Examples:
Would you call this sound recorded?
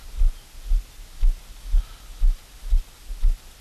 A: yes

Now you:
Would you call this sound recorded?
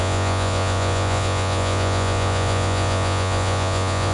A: no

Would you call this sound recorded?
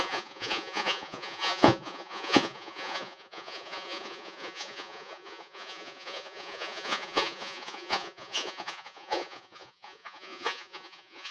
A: no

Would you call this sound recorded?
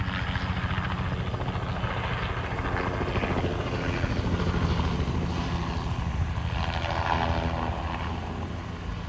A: yes